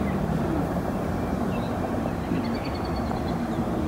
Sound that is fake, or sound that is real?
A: fake